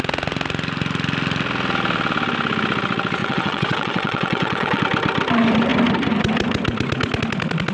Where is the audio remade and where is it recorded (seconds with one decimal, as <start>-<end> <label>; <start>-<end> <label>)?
0.0-3.2 recorded; 3.2-4.8 remade; 4.8-7.7 recorded